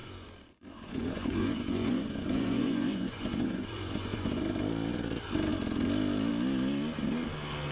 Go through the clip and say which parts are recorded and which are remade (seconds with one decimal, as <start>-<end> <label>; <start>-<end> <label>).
0.0-4.4 remade; 4.4-7.7 recorded